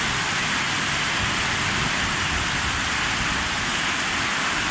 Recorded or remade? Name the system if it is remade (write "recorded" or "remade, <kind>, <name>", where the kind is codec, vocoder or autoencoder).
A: recorded